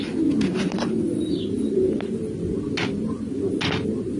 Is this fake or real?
real